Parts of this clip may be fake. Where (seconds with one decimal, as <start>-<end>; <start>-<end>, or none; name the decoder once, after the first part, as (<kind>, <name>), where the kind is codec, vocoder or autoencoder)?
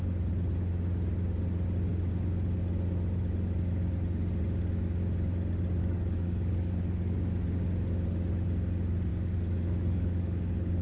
5.8-6.7 (codec, DAC); 9.1-10.8